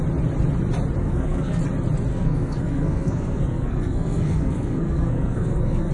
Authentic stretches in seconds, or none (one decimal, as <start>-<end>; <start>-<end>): 0.0-1.0; 1.6-2.1